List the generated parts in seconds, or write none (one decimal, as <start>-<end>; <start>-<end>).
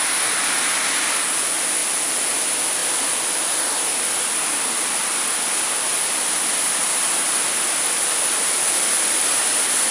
none